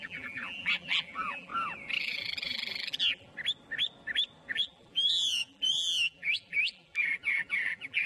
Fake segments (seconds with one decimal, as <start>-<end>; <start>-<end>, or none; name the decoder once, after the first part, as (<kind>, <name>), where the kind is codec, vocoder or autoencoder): 0.0-1.5 (vocoder, BigVGAN v2); 2.0-3.3; 4.5-8.1